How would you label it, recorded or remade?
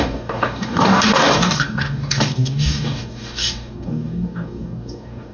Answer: remade